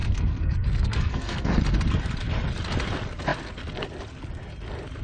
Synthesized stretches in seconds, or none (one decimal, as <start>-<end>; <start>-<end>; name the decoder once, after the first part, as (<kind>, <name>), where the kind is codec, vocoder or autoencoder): 0.0-1.6 (codec, SNAC)